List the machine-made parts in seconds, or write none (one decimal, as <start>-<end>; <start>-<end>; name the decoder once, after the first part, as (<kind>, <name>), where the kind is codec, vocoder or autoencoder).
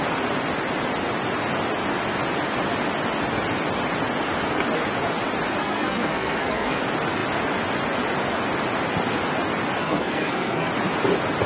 5.6-6.8 (codec, SNAC); 9.8-10.7